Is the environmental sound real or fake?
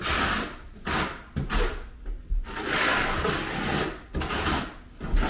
real